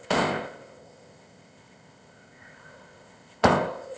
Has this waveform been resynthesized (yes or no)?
yes